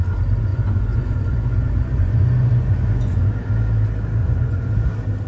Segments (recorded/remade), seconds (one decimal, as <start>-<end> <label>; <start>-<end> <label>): 0.0-0.5 recorded; 0.5-3.5 remade; 3.5-4.2 recorded; 4.2-4.7 remade; 4.7-5.3 recorded